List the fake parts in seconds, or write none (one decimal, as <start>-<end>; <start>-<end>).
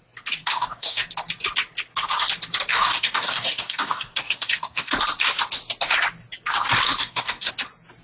0.4-1.1; 2.7-4.9; 7.0-7.5